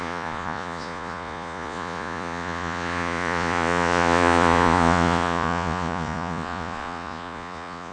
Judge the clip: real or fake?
fake